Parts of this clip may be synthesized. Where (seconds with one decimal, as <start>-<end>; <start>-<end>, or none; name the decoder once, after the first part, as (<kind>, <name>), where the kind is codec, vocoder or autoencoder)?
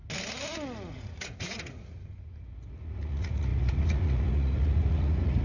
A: 0.9-5.4 (vocoder, Vocos)